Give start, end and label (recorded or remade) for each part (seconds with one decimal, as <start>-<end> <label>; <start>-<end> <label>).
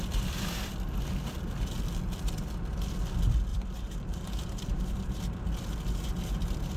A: 0.0-3.5 recorded; 3.5-5.2 remade; 5.2-6.8 recorded